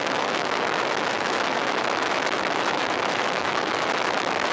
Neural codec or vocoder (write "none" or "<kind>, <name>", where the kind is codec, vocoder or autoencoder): autoencoder, DAC-VAE